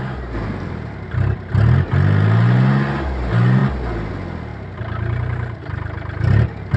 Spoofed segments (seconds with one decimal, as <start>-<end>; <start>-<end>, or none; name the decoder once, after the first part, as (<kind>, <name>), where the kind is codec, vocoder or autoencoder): none